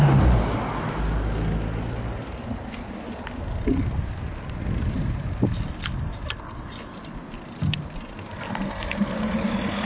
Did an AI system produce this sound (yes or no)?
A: no